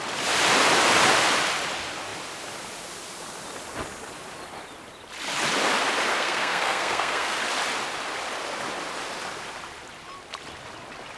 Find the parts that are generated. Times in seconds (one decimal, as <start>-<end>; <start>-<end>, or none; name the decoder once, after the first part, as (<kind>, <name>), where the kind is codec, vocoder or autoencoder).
6.1-7.4 (codec, SNAC)